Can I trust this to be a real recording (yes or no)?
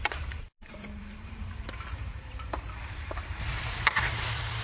no